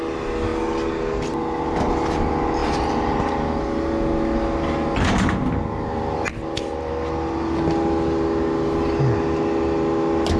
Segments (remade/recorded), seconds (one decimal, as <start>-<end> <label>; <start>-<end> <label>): 0.0-10.4 recorded